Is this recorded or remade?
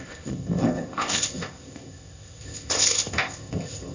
remade